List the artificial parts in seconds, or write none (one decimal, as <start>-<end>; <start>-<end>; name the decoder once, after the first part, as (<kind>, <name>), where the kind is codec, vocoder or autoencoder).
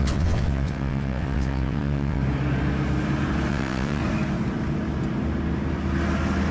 0.0-2.2 (vocoder, WaveNeXt); 3.5-4.0